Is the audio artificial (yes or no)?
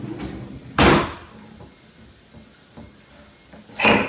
no